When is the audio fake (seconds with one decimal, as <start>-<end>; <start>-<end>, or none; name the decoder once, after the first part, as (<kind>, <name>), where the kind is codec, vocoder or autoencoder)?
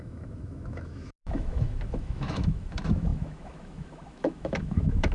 0.0-5.1 (autoencoder, DAC-VAE)